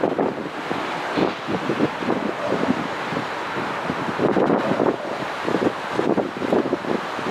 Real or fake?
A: real